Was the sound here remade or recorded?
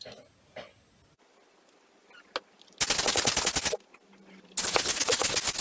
recorded